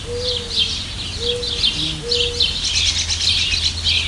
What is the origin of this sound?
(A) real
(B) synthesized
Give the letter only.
A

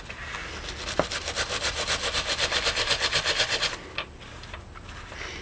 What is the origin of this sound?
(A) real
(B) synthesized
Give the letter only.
A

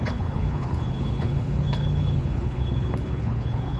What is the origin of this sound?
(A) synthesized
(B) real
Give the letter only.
A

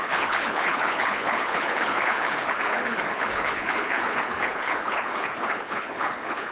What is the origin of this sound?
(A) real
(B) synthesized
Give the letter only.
B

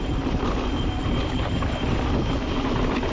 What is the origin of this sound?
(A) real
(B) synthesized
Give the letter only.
A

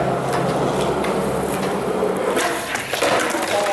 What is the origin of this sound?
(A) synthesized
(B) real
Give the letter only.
B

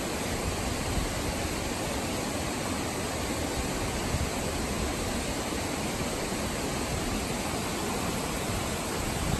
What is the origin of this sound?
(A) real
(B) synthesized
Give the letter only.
A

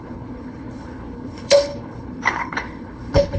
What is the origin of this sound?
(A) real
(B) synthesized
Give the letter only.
B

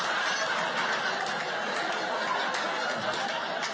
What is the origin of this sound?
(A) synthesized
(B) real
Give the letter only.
B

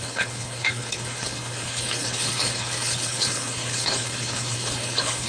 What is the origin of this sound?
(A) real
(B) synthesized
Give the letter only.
B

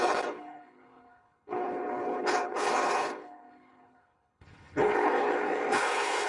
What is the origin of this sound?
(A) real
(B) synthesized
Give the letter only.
B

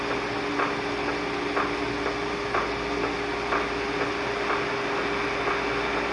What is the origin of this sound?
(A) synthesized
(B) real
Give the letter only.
B